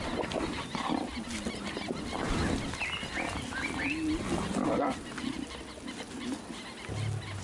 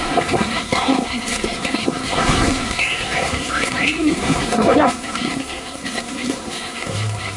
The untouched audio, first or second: first